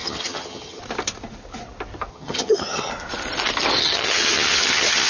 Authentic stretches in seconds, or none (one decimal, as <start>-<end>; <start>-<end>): 0.8-2.1; 2.9-3.8